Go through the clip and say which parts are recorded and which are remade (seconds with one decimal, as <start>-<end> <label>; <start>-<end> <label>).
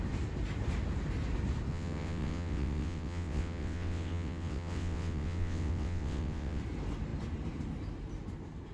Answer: 0.0-1.7 recorded; 1.7-6.6 remade; 6.6-8.7 recorded